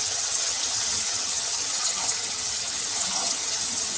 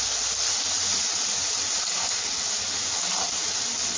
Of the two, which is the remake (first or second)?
first